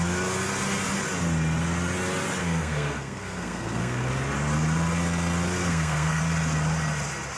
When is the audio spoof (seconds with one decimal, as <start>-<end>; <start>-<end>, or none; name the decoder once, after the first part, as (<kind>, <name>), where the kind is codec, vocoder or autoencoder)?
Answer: 2.4-4.1 (codec, SNAC); 5.6-6.2